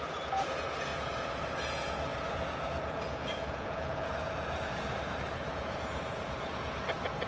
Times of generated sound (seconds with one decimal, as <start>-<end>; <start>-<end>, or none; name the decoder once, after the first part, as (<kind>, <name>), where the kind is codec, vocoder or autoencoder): 0.0-7.3 (vocoder, Vocos)